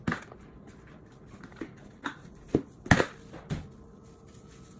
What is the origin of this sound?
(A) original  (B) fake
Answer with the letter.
A